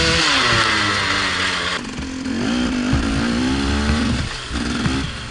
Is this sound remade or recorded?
recorded